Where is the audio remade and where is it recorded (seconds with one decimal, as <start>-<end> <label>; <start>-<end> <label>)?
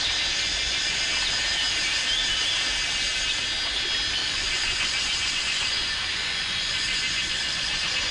0.0-0.5 recorded; 0.5-1.0 remade; 1.0-4.2 recorded; 4.2-8.1 remade